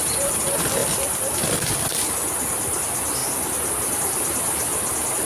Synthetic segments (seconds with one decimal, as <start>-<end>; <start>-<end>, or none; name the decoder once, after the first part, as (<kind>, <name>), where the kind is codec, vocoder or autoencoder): none